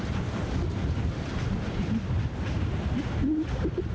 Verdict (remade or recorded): recorded